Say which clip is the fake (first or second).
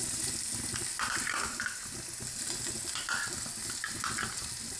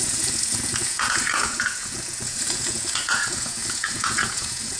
second